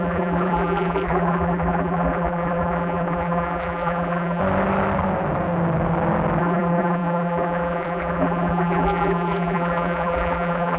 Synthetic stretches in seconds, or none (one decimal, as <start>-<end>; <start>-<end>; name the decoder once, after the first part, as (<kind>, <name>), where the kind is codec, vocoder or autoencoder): 0.0-4.4 (vocoder, BigVGAN v2); 6.4-10.8